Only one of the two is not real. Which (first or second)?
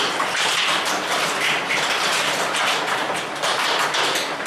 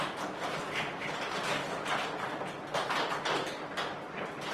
first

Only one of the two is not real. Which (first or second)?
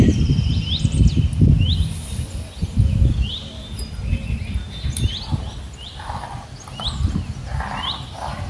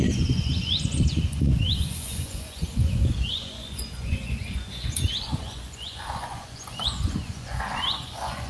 second